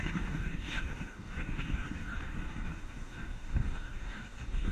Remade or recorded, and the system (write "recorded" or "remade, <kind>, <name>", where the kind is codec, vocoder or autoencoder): remade, codec, DAC